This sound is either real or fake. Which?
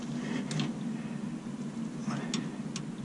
real